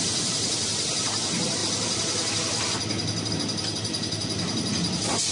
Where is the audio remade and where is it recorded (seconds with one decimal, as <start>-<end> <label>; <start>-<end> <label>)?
0.0-5.3 recorded

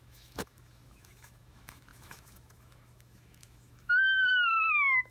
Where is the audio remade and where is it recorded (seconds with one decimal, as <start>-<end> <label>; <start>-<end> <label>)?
0.0-5.1 remade

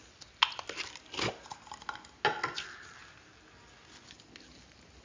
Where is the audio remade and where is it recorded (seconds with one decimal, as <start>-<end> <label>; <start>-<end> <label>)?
0.0-5.0 recorded